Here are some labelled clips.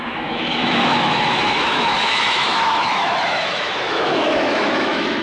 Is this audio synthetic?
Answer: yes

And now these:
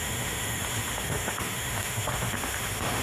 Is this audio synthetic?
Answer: yes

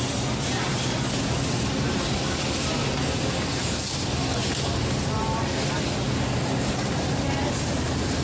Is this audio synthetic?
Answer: no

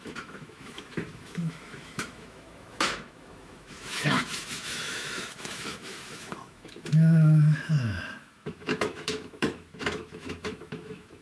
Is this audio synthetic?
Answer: yes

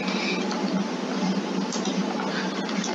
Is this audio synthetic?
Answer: no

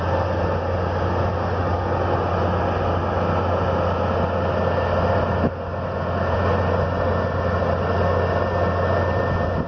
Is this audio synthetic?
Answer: no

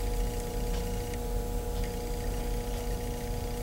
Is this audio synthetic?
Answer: no